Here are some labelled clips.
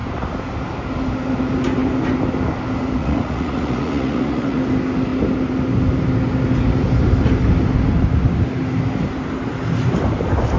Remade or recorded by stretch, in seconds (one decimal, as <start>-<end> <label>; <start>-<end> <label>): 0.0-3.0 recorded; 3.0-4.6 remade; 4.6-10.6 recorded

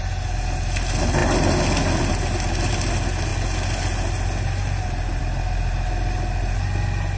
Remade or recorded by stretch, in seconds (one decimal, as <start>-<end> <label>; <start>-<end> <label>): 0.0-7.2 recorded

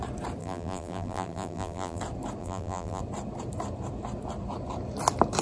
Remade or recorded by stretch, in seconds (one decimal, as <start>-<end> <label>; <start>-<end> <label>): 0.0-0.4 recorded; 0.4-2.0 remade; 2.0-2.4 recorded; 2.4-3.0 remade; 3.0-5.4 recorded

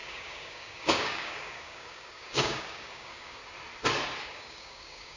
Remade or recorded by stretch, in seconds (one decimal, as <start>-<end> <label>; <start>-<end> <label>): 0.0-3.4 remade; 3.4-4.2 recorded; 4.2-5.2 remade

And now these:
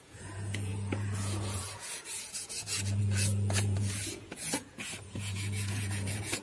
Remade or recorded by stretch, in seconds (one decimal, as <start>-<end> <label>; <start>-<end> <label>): 0.0-6.4 remade

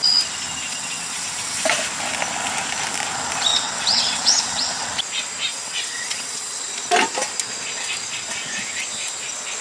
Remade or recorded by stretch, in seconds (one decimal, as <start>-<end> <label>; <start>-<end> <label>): 0.0-0.7 recorded; 0.7-1.6 remade; 1.6-3.5 recorded; 3.5-4.9 remade; 4.9-5.5 recorded; 5.5-6.6 remade; 6.6-9.6 recorded